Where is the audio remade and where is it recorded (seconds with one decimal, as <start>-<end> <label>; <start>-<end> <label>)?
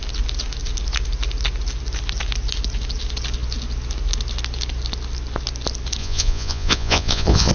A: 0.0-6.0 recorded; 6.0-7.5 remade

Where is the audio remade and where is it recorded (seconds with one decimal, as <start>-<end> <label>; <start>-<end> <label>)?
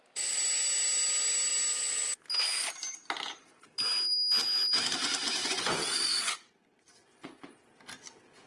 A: 0.0-5.4 recorded; 5.4-6.5 remade; 6.5-7.0 recorded; 7.0-7.5 remade; 7.5-8.5 recorded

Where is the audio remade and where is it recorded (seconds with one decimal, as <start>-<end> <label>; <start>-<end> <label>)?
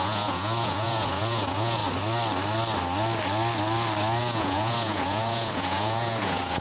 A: 0.0-1.8 remade; 1.8-4.2 recorded; 4.2-6.6 remade